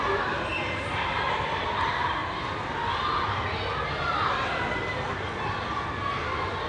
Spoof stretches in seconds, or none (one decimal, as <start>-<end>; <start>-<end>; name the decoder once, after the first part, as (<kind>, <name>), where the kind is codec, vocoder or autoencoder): none